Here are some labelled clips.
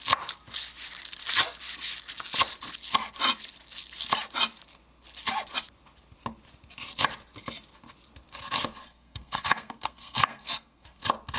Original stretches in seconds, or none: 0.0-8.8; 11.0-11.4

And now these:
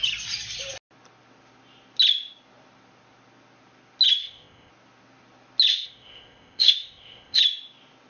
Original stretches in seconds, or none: 0.0-4.2; 4.7-5.7; 7.4-8.1

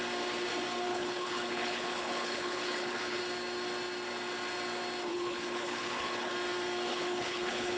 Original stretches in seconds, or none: 0.0-0.9; 3.2-5.1; 6.3-6.9

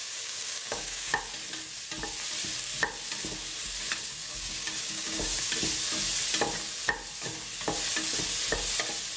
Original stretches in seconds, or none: 1.2-4.2; 5.5-9.2